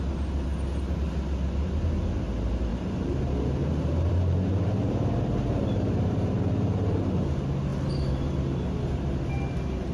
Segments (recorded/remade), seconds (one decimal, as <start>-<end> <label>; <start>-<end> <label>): 0.0-2.7 recorded; 2.7-7.2 remade; 7.2-9.9 recorded